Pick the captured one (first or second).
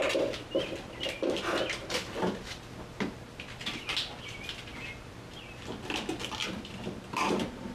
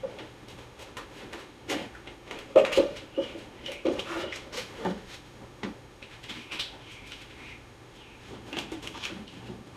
first